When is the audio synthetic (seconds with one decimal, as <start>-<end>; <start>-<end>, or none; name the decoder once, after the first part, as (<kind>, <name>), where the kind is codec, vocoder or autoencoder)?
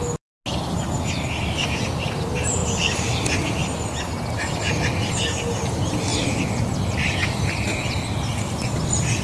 none